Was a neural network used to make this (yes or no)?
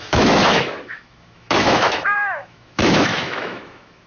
yes